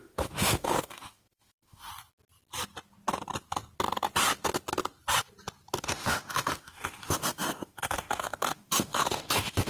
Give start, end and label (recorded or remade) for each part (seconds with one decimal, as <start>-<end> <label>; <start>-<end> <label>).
0.0-1.9 remade; 1.9-5.8 recorded; 5.8-9.7 remade